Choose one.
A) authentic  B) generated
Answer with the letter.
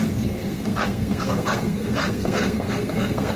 B